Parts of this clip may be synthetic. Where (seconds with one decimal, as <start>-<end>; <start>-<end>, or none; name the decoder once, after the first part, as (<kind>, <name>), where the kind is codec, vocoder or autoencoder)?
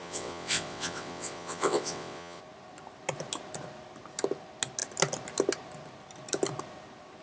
0.0-2.4 (vocoder, WaveNeXt)